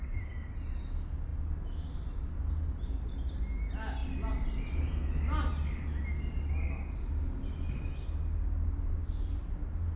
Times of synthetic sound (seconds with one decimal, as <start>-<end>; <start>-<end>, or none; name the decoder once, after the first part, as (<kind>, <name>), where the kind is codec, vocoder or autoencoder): none